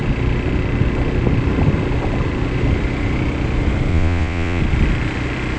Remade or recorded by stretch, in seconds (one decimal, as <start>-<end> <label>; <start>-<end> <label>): 0.0-3.9 recorded; 3.9-4.6 remade; 4.6-5.6 recorded